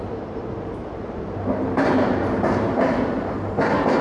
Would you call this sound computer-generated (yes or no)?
yes